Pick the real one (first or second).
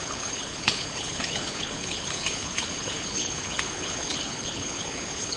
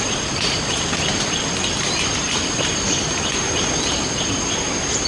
second